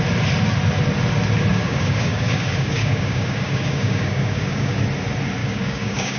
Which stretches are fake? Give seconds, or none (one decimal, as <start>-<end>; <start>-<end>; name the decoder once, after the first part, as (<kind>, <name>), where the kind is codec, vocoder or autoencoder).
1.5-4.8 (codec, DAC); 5.4-6.2